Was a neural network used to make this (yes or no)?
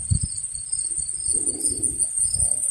no